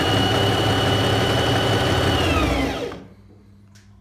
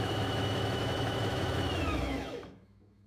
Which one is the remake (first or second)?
second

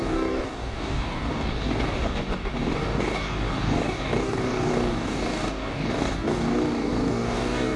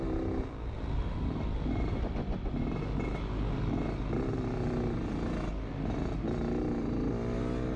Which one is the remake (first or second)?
first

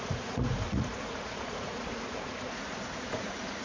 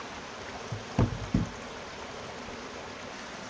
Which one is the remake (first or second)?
first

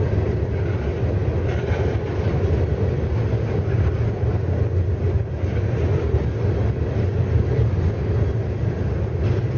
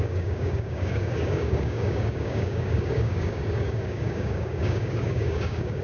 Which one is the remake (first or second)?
second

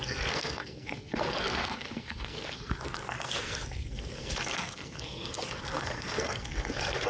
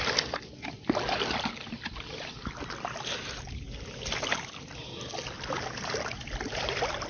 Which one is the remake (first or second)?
first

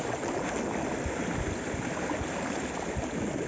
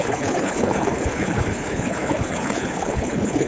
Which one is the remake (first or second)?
second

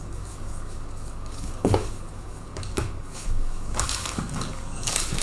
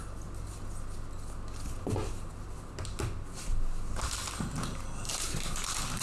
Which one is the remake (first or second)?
first